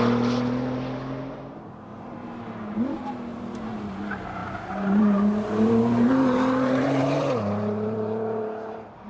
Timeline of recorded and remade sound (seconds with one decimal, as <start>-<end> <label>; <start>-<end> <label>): 0.0-1.9 recorded; 1.9-2.8 remade; 2.8-3.3 recorded; 3.3-3.9 remade; 3.9-4.4 recorded; 4.4-9.1 remade